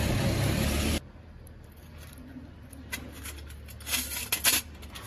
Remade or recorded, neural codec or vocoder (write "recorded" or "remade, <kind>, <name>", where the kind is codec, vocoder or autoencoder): recorded